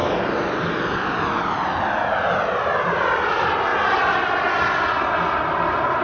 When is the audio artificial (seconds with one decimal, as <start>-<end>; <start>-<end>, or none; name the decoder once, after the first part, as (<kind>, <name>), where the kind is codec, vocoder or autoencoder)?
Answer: 2.8-3.7 (vocoder, BigVGAN v2); 5.5-6.0